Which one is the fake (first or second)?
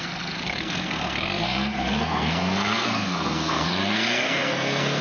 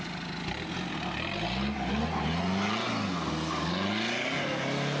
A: first